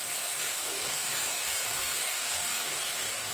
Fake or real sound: fake